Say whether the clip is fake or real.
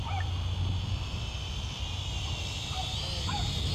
real